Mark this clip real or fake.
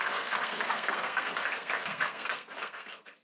fake